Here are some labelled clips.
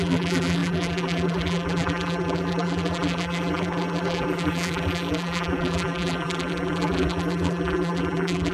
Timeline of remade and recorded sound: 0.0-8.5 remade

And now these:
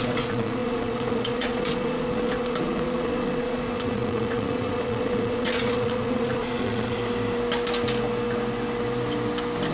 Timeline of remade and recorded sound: 0.0-7.0 remade; 7.0-9.7 recorded

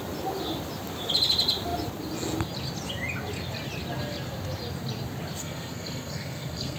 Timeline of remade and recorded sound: 0.0-5.4 recorded; 5.4-6.8 remade

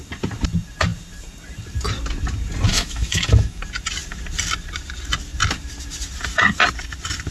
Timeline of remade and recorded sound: 0.0-2.7 recorded; 2.7-3.6 remade; 3.6-7.3 recorded